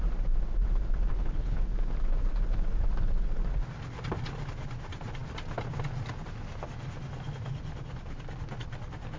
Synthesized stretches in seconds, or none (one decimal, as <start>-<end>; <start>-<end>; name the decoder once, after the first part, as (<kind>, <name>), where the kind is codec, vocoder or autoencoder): 1.1-1.6 (codec, HILCodec)